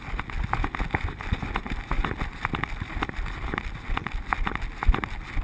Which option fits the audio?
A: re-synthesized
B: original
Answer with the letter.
B